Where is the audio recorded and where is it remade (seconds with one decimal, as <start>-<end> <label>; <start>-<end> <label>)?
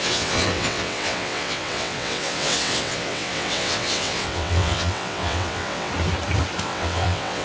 0.0-5.9 remade; 5.9-6.6 recorded; 6.6-7.4 remade